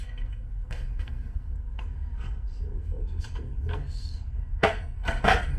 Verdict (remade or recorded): remade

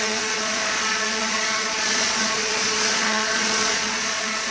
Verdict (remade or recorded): remade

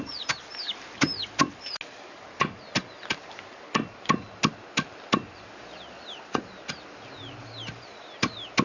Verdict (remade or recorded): recorded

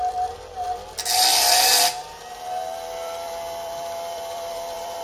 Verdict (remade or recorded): remade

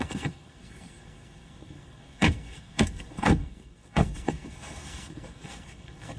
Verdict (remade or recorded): remade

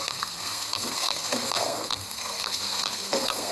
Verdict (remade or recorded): remade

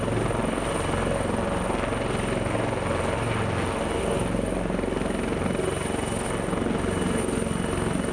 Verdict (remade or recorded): recorded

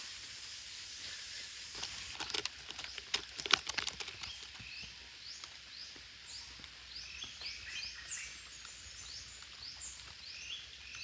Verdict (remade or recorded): recorded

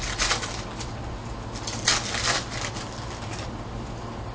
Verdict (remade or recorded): recorded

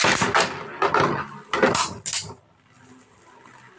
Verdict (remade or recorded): recorded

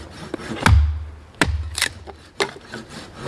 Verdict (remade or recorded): recorded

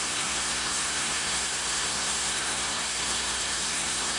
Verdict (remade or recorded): remade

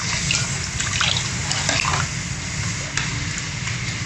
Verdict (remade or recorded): recorded